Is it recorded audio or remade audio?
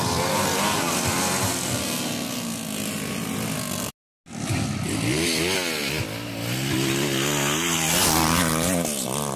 recorded